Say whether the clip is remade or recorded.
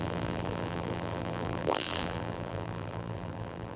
remade